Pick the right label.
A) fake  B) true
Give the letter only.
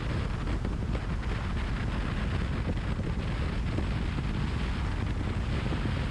B